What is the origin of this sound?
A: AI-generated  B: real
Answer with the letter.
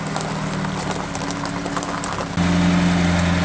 B